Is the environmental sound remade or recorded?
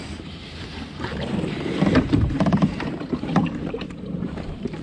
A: remade